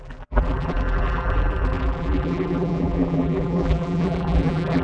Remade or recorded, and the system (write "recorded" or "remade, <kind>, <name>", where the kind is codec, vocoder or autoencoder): remade, vocoder, BigVGAN v2